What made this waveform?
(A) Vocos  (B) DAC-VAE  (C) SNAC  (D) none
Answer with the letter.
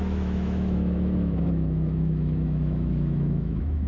B